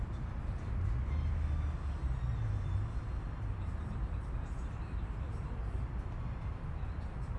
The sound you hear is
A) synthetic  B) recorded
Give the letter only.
B